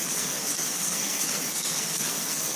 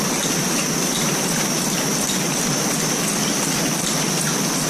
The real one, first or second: second